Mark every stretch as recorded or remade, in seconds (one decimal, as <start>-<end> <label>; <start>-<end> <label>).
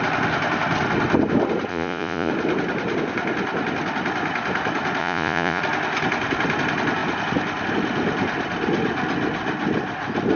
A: 0.0-1.7 recorded; 1.7-2.3 remade; 2.3-5.0 recorded; 5.0-5.6 remade; 5.6-10.4 recorded